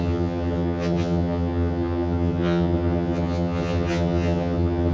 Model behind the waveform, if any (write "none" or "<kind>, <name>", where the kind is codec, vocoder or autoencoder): vocoder, HiFi-GAN